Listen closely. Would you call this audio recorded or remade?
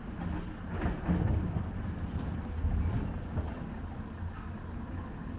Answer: recorded